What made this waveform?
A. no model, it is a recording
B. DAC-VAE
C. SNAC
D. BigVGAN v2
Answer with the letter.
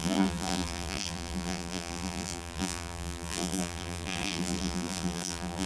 D